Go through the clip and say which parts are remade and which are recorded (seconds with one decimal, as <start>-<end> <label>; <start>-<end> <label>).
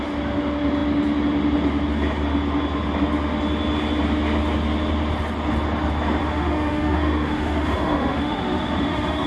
0.0-6.2 recorded; 6.2-9.3 remade